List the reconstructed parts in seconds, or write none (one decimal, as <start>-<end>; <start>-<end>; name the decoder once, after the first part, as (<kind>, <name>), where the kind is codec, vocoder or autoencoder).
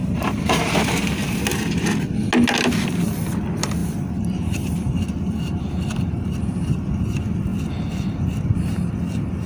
0.0-1.3 (vocoder, BigVGAN v2); 3.8-6.3